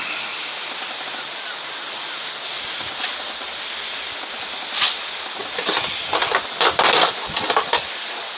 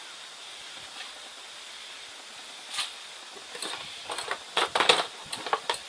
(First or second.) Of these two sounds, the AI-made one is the second